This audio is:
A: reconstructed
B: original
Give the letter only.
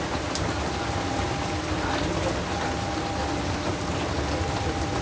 B